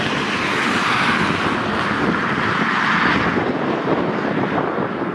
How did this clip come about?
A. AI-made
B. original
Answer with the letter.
B